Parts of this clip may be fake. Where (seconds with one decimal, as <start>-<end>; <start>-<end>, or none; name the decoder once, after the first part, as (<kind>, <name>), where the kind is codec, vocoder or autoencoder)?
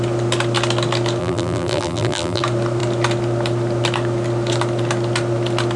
1.2-2.4 (vocoder, BigVGAN v2)